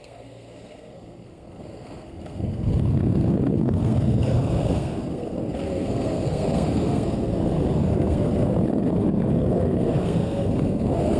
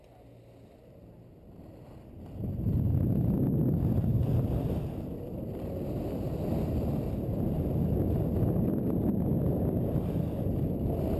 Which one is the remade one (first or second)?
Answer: first